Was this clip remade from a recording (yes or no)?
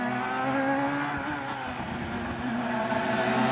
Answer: no